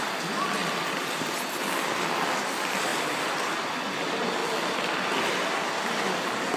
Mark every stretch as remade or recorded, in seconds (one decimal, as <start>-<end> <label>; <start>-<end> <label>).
0.0-0.6 recorded; 0.6-2.2 remade; 2.2-4.4 recorded; 4.4-5.7 remade; 5.7-6.6 recorded